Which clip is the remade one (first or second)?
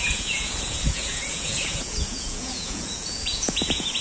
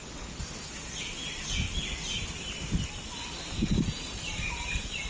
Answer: first